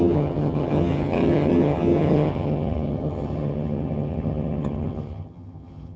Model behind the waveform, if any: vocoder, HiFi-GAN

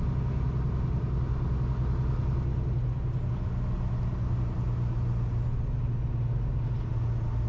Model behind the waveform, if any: none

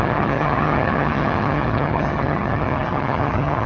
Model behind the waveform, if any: vocoder, HiFi-GAN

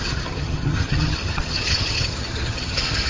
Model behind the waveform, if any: vocoder, HiFi-GAN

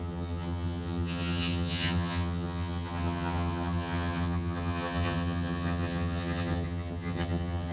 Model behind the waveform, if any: vocoder, HiFi-GAN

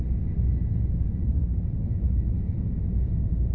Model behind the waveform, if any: none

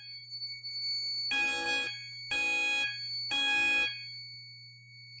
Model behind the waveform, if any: none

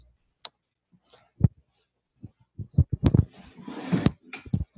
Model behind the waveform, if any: none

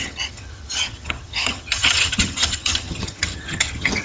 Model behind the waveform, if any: vocoder, HiFi-GAN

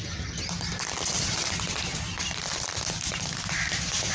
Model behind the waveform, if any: none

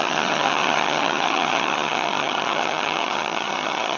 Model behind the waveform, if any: vocoder, HiFi-GAN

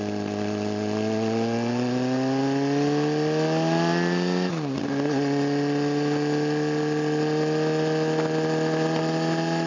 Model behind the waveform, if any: none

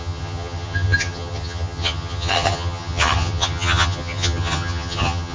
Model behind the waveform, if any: vocoder, HiFi-GAN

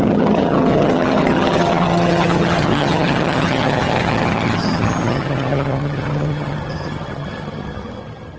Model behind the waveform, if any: vocoder, HiFi-GAN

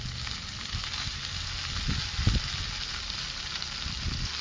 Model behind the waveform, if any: none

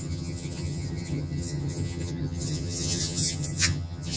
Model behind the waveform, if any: vocoder, HiFi-GAN